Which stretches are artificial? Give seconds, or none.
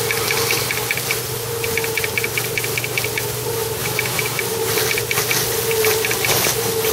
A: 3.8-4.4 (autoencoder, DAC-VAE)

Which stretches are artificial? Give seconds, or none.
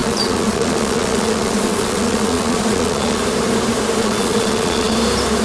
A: 0.0-3.2 (vocoder, Vocos); 4.0-4.9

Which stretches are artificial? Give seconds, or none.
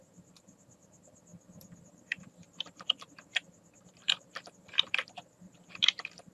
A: 0.0-1.3 (vocoder, BigVGAN v2); 1.8-6.3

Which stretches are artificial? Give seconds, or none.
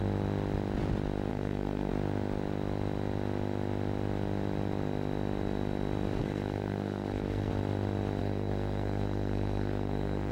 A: 1.3-1.9 (codec, SNAC); 6.2-7.5; 8.2-10.3